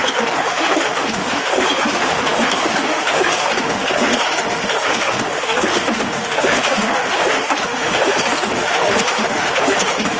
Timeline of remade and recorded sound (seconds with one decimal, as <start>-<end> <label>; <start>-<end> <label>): 0.0-10.2 remade